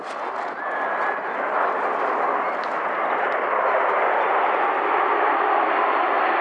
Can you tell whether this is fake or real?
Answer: real